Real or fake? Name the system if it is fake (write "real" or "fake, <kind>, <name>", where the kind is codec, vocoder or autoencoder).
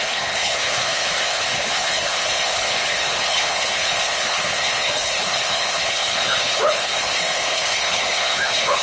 fake, codec, HILCodec